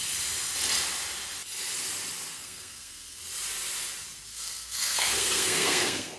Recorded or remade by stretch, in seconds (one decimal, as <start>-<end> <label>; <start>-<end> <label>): 0.0-2.3 recorded; 2.3-3.2 remade; 3.2-4.3 recorded; 4.3-6.2 remade